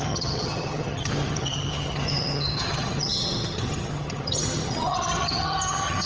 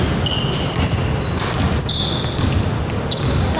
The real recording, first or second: second